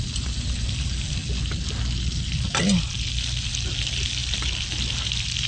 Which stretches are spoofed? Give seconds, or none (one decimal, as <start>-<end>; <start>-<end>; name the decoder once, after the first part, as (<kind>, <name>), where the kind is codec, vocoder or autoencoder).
none

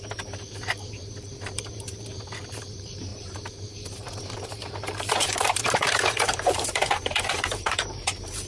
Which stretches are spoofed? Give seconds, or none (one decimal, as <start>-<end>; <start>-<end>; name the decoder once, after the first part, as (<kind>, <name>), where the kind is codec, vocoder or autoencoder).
0.0-8.5 (vocoder, BigVGAN v2)

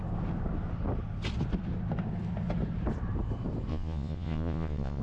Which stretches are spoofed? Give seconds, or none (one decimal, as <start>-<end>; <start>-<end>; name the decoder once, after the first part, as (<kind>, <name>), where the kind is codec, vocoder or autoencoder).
3.7-5.0 (vocoder, Vocos)